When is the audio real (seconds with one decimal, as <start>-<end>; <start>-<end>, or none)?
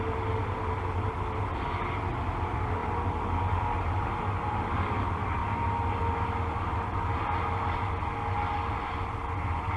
0.0-9.8